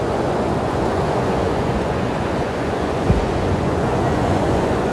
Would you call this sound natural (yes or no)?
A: no